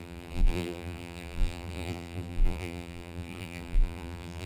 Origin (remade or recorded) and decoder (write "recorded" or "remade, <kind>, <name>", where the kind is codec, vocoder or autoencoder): remade, vocoder, BigVGAN v2